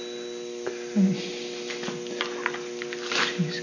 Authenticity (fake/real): real